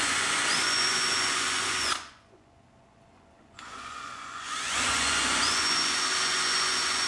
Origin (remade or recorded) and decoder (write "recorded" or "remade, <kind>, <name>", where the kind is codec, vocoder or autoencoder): remade, vocoder, Vocos